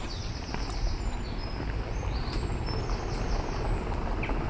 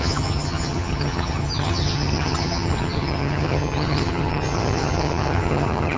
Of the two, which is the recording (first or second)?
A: first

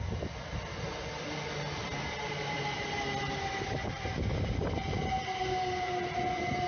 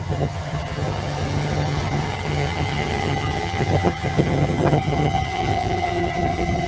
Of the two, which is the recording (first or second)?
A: first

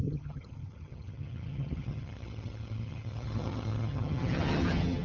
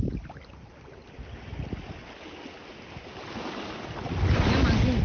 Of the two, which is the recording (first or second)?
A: second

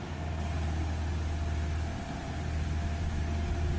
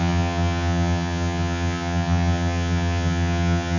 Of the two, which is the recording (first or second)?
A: first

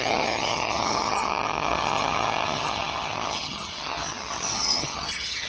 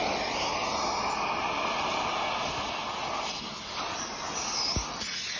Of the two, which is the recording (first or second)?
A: second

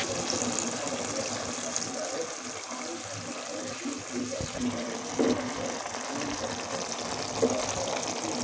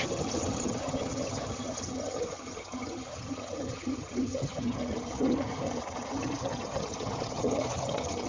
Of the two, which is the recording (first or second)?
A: first